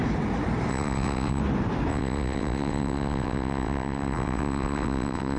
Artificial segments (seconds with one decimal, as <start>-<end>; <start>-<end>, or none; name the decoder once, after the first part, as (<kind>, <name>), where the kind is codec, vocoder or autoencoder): 0.7-1.4 (vocoder, WaveNeXt); 1.9-5.4

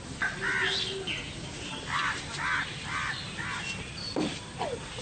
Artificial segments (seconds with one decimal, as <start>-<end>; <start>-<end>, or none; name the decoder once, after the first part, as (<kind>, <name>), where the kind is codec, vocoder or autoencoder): none

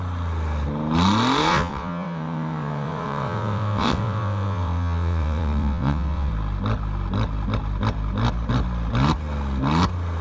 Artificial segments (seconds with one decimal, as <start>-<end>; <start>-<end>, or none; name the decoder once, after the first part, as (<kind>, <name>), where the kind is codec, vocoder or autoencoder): 1.4-6.3 (vocoder, WaveNeXt)

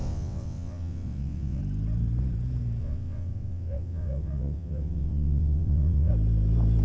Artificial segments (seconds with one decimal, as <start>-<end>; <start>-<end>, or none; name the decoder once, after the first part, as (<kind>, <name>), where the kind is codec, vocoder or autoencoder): 0.0-1.6 (vocoder, WaveNeXt); 2.8-6.1

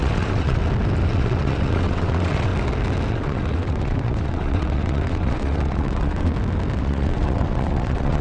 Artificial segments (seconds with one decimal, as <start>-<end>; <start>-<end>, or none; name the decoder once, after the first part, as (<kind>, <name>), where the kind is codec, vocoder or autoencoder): 0.0-0.6 (vocoder, WaveNeXt); 1.1-2.5; 3.1-6.3; 6.8-8.2

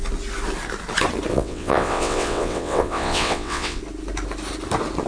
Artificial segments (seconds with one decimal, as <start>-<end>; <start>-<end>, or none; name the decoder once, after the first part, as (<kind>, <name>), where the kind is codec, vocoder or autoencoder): 1.3-3.8 (vocoder, WaveNeXt)

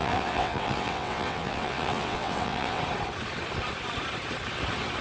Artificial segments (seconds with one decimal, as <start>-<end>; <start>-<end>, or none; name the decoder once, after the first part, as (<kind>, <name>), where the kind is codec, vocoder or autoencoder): 0.0-2.8 (vocoder, WaveNeXt)

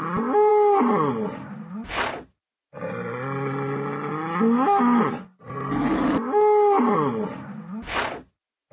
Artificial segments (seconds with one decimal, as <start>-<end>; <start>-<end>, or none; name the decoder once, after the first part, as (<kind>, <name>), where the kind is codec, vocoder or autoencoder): none